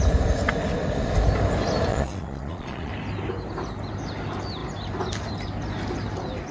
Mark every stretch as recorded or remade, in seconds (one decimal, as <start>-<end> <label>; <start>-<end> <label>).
0.0-1.9 recorded; 1.9-2.9 remade; 2.9-6.5 recorded